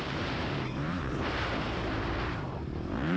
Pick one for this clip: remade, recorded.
remade